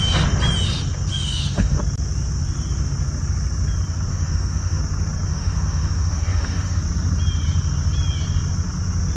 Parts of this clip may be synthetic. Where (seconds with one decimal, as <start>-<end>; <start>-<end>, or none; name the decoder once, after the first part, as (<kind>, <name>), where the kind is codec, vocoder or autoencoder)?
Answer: 1.1-1.8 (autoencoder, DAC-VAE); 4.1-4.8; 5.3-6.8